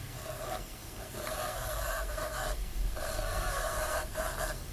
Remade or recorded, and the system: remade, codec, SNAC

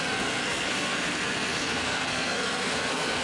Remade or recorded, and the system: remade, codec, SNAC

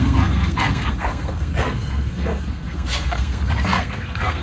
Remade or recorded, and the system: remade, codec, SNAC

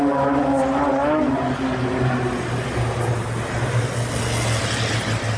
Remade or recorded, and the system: recorded